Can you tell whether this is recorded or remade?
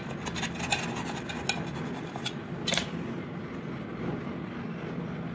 recorded